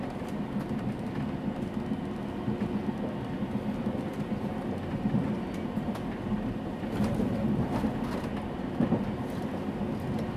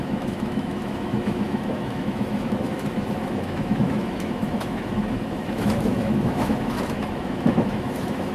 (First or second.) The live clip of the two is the first